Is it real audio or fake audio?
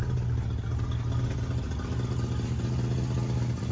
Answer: real